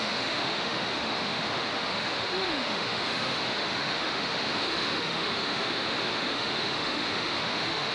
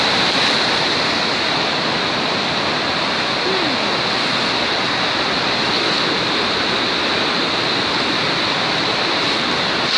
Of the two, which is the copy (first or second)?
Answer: first